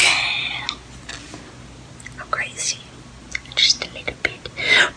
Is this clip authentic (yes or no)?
yes